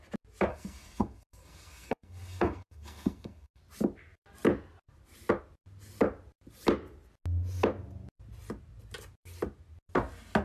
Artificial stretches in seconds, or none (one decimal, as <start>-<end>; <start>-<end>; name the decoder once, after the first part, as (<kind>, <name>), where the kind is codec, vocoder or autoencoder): 0.5-3.6 (codec, SNAC)